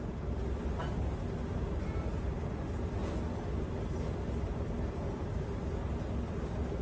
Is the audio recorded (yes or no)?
yes